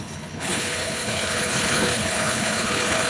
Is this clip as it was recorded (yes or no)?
no